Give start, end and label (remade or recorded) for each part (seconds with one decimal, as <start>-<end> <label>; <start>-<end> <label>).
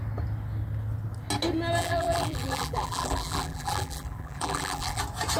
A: 0.0-1.8 recorded; 1.8-5.0 remade; 5.0-5.4 recorded